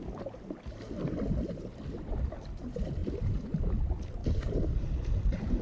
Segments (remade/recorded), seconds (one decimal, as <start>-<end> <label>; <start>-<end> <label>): 0.0-4.2 remade; 4.2-4.7 recorded; 4.7-5.6 remade